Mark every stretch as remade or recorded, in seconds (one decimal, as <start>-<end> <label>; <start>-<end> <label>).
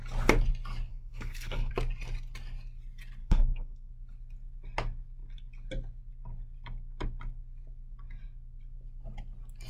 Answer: 0.0-0.9 recorded; 0.9-1.7 remade; 1.7-3.2 recorded; 3.2-3.9 remade; 3.9-9.7 recorded